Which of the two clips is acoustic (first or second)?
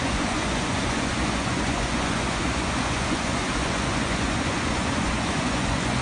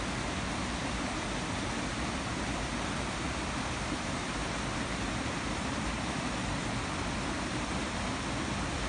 second